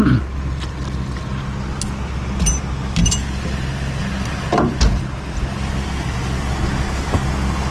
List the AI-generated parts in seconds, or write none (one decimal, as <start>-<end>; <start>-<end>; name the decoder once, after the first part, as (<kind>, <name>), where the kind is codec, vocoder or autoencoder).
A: none